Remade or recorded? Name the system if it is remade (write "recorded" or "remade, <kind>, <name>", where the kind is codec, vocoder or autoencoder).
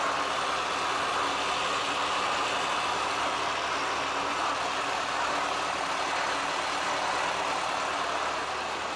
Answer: recorded